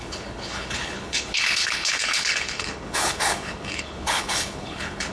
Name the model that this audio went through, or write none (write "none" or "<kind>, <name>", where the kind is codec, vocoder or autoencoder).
codec, HILCodec